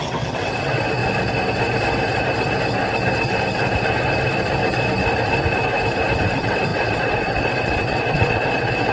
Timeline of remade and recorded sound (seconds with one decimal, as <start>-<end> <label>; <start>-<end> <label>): 0.0-1.0 remade; 1.0-6.2 recorded; 6.2-8.9 remade

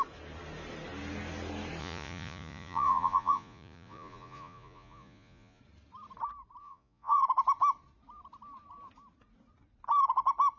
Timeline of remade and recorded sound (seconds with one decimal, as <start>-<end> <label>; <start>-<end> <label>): 0.0-1.8 recorded; 1.8-5.6 remade; 5.6-6.6 recorded; 6.6-7.2 remade; 7.2-10.6 recorded

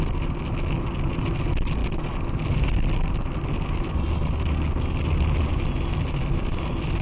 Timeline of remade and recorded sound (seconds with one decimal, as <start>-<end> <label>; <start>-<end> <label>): 0.0-7.0 recorded

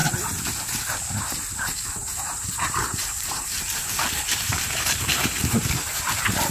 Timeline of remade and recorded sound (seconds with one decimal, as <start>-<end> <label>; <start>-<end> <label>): 0.0-1.2 recorded; 1.2-6.5 remade

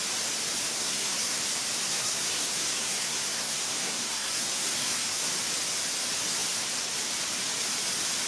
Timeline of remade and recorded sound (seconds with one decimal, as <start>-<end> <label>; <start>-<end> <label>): 0.0-0.7 recorded; 0.7-1.4 remade; 1.4-1.9 recorded; 1.9-5.3 remade; 5.3-8.3 recorded

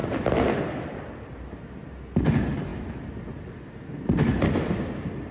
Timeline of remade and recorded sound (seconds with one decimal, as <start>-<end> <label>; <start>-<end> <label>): 0.0-5.3 recorded

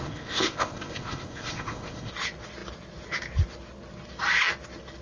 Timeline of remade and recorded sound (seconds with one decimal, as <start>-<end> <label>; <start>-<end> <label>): 0.0-2.1 remade; 2.1-5.0 recorded